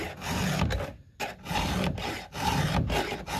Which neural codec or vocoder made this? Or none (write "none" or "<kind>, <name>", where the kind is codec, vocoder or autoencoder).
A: none